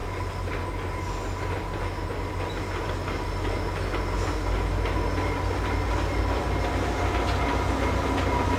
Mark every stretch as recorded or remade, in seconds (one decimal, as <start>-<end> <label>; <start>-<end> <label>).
0.0-8.6 recorded